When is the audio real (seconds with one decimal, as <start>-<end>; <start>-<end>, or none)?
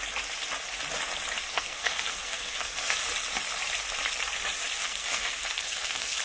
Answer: 0.0-1.5; 3.0-4.8